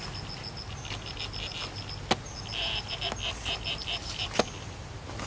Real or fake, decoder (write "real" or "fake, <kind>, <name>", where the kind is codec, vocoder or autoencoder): real